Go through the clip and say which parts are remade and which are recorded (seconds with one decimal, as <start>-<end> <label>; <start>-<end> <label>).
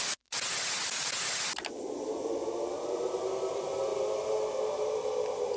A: 0.0-3.9 recorded; 3.9-5.1 remade; 5.1-5.6 recorded